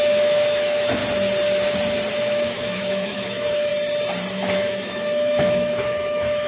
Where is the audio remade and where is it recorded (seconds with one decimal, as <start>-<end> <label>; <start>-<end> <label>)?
0.0-1.0 remade; 1.0-2.1 recorded; 2.1-3.7 remade; 3.7-4.3 recorded; 4.3-6.5 remade